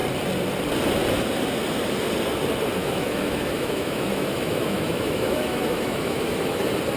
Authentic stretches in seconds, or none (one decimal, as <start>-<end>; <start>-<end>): 0.0-2.8; 6.6-7.0